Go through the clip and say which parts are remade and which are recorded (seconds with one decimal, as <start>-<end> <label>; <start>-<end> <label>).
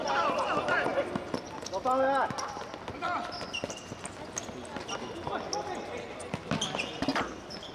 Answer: 0.0-7.7 recorded